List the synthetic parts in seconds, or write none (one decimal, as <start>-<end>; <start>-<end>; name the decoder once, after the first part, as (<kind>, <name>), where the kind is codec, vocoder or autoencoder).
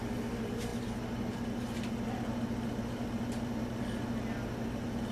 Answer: none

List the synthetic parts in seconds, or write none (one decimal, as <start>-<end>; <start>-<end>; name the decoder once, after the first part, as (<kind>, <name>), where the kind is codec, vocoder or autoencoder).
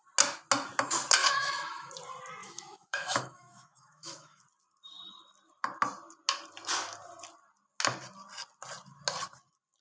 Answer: 1.2-1.9 (autoencoder, DAC-VAE); 2.4-4.4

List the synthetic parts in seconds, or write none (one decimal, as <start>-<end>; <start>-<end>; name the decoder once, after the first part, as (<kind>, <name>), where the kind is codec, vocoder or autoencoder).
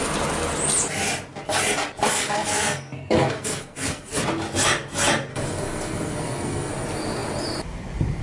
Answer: 2.1-4.1 (codec, SNAC); 5.3-6.7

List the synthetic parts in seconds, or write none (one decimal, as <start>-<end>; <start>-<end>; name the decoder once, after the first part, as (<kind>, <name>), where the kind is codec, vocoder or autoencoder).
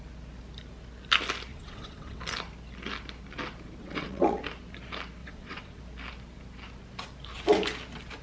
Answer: 1.5-2.2 (vocoder, WaveNeXt); 3.8-4.4; 5.2-5.8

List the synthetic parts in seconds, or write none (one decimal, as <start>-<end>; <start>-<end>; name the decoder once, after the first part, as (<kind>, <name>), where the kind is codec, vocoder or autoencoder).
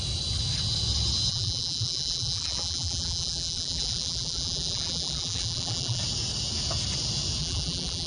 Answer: 1.3-6.0 (vocoder, BigVGAN v2); 7.4-8.1